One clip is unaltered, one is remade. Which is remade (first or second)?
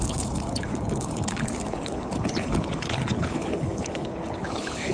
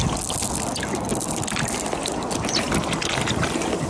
first